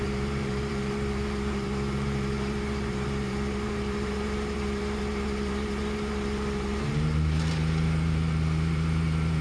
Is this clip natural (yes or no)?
no